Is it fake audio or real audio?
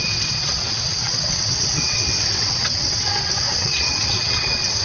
fake